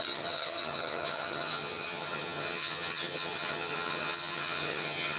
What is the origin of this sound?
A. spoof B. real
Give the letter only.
A